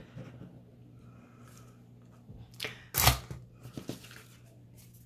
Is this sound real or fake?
real